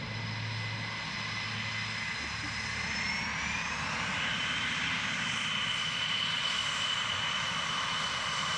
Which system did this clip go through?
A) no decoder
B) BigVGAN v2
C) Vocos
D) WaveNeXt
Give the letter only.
A